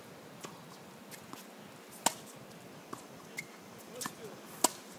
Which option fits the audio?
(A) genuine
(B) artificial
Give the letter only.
A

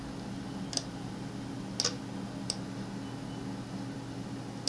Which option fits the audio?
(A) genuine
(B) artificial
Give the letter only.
A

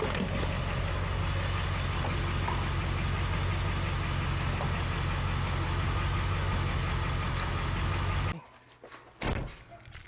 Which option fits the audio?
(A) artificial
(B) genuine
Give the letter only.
B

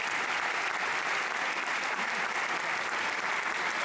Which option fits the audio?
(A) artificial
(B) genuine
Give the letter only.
B